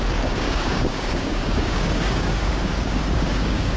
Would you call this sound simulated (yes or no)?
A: yes